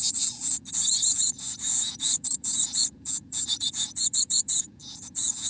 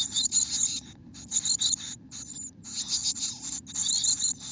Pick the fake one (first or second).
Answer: first